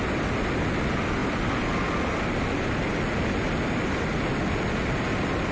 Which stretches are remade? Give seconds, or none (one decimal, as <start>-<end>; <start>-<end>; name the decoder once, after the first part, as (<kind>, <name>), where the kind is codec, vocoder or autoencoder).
none